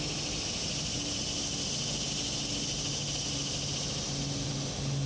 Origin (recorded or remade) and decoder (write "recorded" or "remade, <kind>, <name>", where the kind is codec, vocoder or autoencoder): recorded